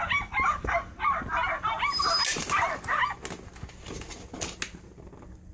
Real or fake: real